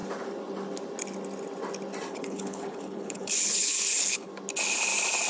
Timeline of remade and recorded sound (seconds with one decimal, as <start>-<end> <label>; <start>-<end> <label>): 0.0-2.1 recorded; 2.1-4.3 remade; 4.3-5.3 recorded